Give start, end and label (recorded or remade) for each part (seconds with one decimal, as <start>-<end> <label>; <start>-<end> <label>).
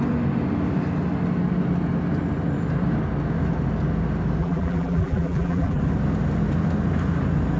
0.0-4.4 recorded; 4.4-5.8 remade; 5.8-7.6 recorded